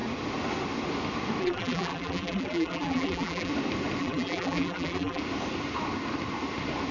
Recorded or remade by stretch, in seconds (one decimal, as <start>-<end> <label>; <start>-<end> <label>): 0.0-1.4 recorded; 1.4-3.5 remade; 3.5-4.0 recorded; 4.0-5.2 remade; 5.2-6.9 recorded